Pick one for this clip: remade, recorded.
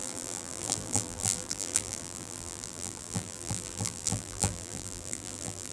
remade